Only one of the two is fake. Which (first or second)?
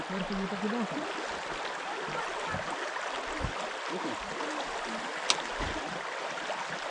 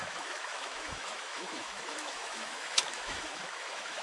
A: second